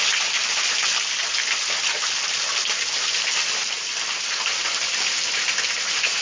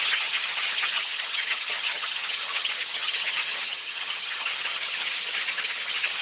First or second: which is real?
first